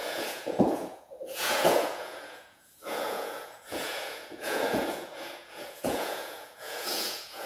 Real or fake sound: fake